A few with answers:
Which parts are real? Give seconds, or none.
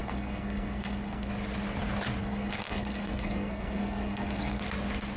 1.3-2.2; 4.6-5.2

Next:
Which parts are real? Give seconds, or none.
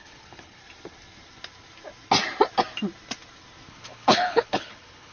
0.6-3.7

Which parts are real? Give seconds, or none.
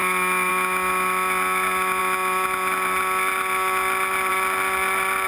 0.0-5.3